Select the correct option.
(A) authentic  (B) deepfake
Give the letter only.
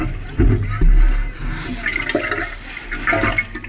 A